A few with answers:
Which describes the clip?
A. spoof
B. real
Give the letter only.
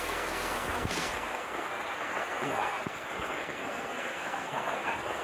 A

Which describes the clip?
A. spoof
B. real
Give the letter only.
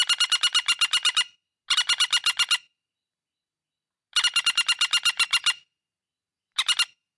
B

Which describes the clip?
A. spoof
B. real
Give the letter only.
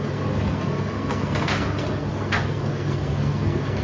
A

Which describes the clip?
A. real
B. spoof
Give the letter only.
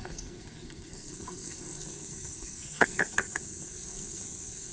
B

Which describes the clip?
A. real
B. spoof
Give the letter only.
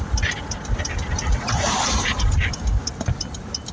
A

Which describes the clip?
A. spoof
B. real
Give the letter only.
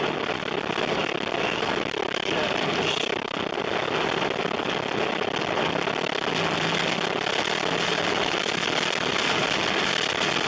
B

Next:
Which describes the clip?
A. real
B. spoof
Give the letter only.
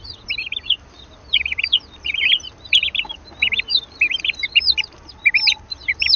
A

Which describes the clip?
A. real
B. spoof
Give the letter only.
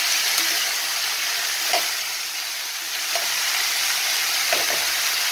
A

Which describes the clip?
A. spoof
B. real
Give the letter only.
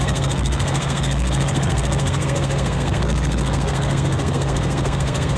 A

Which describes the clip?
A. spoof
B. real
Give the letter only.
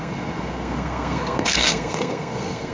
A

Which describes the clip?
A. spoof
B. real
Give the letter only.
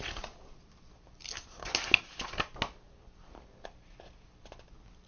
B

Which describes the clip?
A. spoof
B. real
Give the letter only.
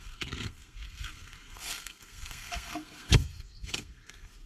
A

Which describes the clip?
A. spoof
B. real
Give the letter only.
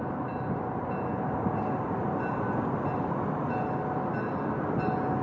B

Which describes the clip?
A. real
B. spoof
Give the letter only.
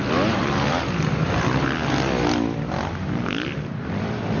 A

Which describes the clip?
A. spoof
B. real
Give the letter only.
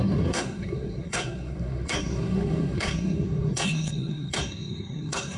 A